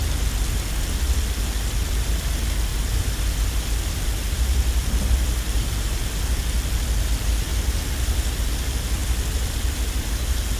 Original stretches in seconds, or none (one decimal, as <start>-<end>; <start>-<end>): 0.0-2.7; 6.1-7.5; 8.3-9.0; 10.0-10.6